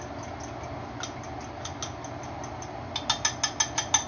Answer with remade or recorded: recorded